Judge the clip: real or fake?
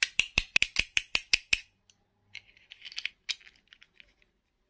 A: real